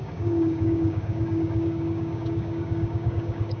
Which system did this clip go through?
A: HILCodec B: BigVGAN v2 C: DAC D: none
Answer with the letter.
C